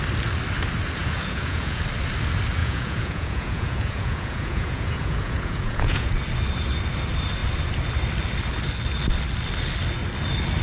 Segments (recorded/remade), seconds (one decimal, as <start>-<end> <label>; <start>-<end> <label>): 0.0-1.0 recorded; 1.0-1.8 remade; 1.8-2.6 recorded; 2.6-6.1 remade; 6.1-10.6 recorded

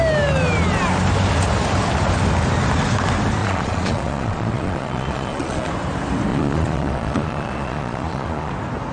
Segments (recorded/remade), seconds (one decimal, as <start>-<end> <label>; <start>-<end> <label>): 0.0-3.4 recorded; 3.4-5.7 remade; 5.7-6.3 recorded; 6.3-8.5 remade; 8.5-8.9 recorded

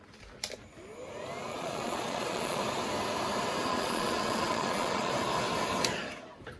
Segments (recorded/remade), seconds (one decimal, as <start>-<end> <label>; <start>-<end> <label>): 0.0-1.5 recorded; 1.5-2.6 remade; 2.6-3.7 recorded; 3.7-5.1 remade; 5.1-6.6 recorded

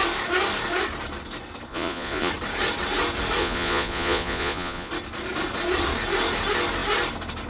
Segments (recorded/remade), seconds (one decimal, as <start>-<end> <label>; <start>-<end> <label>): 0.0-1.7 recorded; 1.7-2.3 remade; 2.3-3.4 recorded; 3.4-4.9 remade; 4.9-7.5 recorded

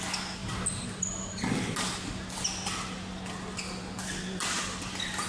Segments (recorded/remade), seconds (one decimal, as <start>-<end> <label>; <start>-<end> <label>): 0.0-5.3 recorded

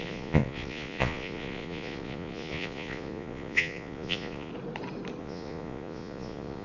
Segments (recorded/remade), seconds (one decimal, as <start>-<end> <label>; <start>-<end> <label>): 0.0-4.5 remade; 4.5-5.2 recorded; 5.2-6.6 remade